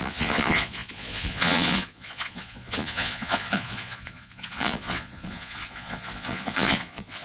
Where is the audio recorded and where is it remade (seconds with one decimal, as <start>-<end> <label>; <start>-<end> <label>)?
0.0-7.2 remade